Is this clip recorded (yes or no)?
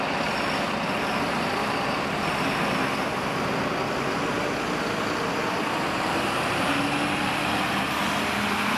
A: yes